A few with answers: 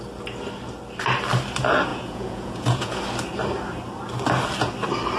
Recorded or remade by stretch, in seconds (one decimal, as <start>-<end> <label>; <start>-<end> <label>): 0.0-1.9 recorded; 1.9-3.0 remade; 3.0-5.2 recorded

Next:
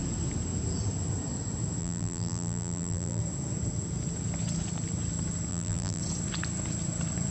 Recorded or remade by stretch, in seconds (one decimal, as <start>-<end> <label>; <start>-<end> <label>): 0.0-1.8 recorded; 1.8-3.2 remade; 3.2-5.5 recorded; 5.5-6.0 remade; 6.0-7.3 recorded

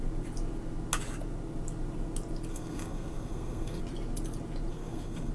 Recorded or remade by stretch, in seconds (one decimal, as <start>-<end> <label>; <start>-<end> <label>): 0.0-2.5 recorded; 2.5-3.8 remade; 3.8-4.7 recorded; 4.7-5.3 remade

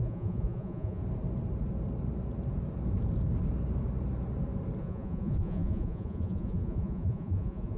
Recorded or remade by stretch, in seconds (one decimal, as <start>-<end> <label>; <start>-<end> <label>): 0.0-1.0 remade; 1.0-4.8 recorded; 4.8-7.8 remade